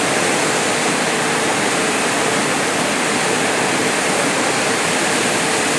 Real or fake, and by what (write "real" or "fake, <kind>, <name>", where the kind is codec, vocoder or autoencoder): real